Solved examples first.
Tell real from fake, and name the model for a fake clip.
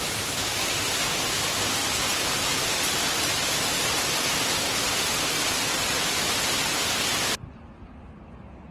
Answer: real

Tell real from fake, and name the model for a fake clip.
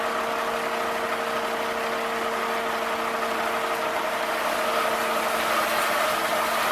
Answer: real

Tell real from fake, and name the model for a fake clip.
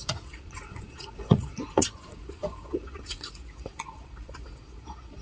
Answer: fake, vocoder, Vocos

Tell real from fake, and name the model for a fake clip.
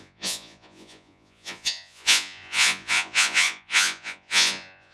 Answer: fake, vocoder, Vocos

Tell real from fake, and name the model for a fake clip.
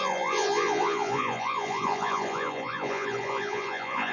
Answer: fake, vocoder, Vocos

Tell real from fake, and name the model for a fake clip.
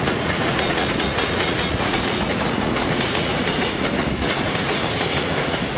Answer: fake, vocoder, Vocos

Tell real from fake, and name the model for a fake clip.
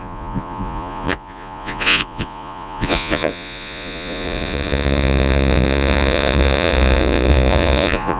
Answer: fake, vocoder, Vocos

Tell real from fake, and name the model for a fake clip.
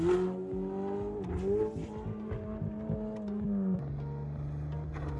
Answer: real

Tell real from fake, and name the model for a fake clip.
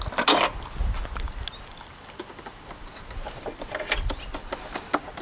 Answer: real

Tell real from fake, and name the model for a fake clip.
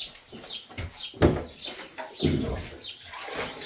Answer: real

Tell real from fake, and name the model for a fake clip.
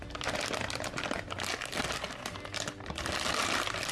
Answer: real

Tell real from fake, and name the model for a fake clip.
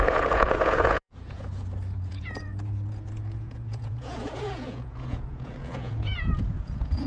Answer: fake, vocoder, Vocos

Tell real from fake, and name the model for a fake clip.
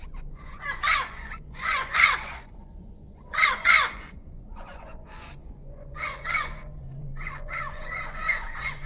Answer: fake, vocoder, Vocos